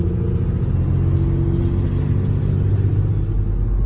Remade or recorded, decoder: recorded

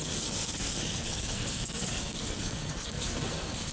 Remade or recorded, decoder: remade, codec, SNAC